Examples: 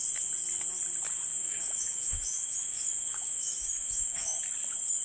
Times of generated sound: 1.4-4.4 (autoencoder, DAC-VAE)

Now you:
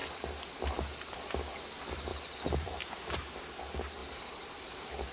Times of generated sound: 2.1-3.4 (vocoder, BigVGAN v2); 4.0-5.1

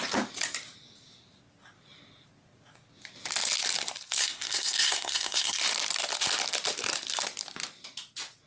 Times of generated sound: 4.2-5.6 (codec, SNAC)

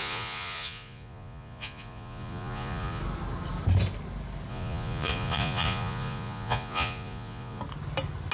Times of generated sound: 0.0-3.0 (vocoder, Vocos); 4.5-7.6